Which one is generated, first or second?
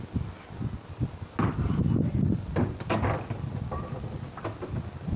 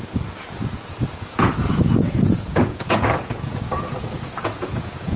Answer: second